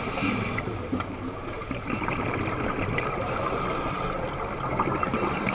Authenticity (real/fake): real